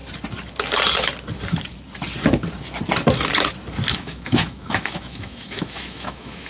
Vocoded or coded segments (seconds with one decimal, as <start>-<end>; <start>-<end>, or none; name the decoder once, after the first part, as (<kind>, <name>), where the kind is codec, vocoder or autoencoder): 3.9-6.5 (autoencoder, DAC-VAE)